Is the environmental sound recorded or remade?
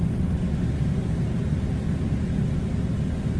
recorded